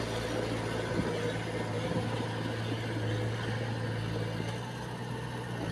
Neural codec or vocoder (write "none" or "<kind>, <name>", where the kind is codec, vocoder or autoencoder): none